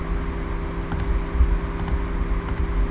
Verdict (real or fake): real